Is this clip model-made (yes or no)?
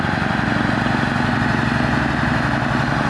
no